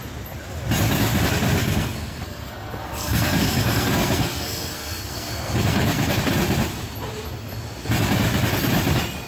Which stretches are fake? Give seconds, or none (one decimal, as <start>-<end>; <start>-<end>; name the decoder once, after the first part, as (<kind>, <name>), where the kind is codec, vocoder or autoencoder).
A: 1.6-6.2 (codec, SNAC)